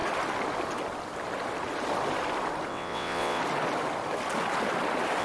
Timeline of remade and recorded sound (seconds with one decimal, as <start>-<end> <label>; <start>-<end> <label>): 0.0-2.7 recorded; 2.7-3.4 remade; 3.4-5.2 recorded